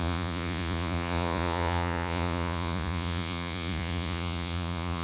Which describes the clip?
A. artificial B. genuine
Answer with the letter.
A